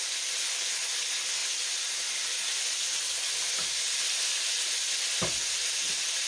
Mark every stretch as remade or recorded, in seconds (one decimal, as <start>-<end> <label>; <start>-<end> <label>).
0.0-6.3 recorded